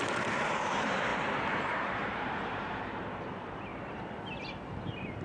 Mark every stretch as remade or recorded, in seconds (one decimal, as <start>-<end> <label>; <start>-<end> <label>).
0.0-3.7 remade; 3.7-4.5 recorded; 4.5-5.2 remade